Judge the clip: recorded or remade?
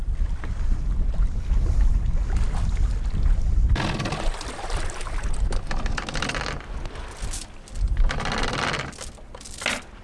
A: recorded